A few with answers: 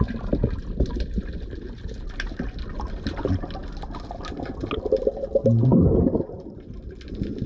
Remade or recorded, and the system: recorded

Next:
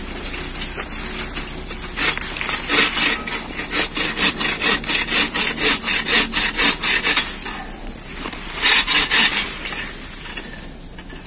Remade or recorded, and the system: recorded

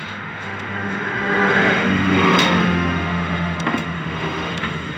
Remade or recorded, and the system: remade, autoencoder, DAC-VAE